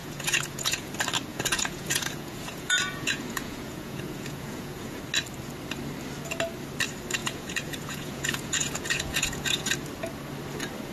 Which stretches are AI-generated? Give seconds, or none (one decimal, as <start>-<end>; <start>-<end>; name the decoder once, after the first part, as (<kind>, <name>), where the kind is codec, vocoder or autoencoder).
0.0-0.9 (vocoder, Vocos); 1.3-5.0; 7.2-9.7